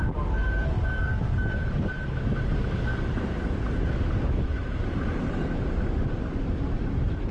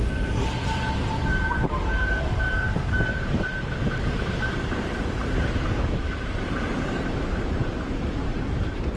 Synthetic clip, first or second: second